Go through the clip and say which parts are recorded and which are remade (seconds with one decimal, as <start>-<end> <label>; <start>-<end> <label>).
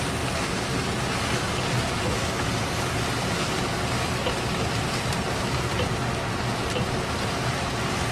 0.0-8.1 recorded